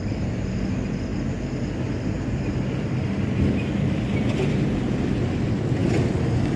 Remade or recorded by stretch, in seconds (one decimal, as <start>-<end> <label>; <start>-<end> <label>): 0.0-6.6 recorded